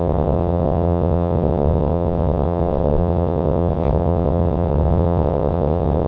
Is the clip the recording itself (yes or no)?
no